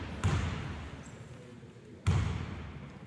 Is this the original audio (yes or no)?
yes